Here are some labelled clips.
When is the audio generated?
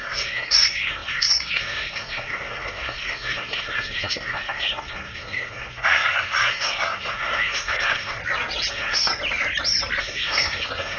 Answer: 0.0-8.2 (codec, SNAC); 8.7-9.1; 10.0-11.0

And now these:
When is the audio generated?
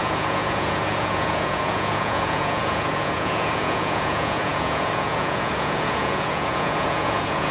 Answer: 0.0-7.5 (vocoder, Vocos)